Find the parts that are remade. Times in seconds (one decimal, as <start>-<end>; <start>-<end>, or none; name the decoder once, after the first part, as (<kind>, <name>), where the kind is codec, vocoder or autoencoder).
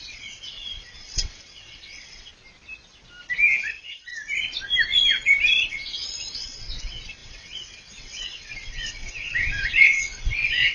0.0-2.3 (vocoder, WaveNeXt); 3.6-4.1; 5.7-10.7